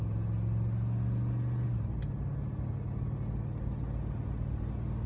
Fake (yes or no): no